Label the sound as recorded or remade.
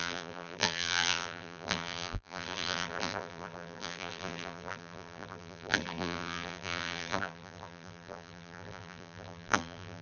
remade